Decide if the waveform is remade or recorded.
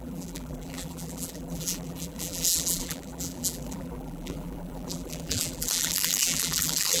remade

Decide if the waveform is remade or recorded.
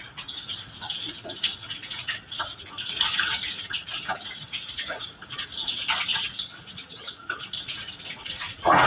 remade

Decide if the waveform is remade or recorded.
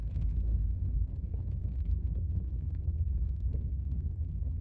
remade